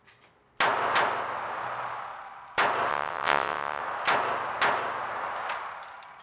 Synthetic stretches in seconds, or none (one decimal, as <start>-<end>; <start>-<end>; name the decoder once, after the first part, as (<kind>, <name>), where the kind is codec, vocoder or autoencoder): 2.9-3.8 (vocoder, WaveNeXt)